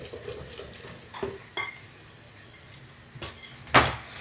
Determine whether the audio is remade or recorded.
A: recorded